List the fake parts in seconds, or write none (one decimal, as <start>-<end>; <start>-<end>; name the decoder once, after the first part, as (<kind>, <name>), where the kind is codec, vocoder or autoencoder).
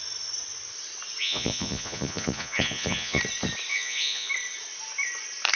1.2-3.2 (vocoder, Vocos); 3.7-4.3